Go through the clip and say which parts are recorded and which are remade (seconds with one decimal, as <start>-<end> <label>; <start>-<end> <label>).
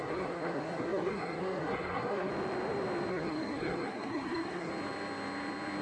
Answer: 0.0-2.3 remade; 2.3-3.1 recorded; 3.1-4.7 remade; 4.7-5.8 recorded